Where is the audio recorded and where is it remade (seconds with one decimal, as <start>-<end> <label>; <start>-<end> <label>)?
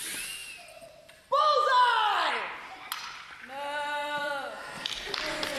0.0-4.0 recorded; 4.0-5.6 remade